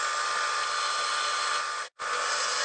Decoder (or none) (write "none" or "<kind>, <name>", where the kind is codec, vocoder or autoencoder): none